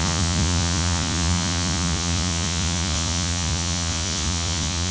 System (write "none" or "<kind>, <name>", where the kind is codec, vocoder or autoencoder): vocoder, Vocos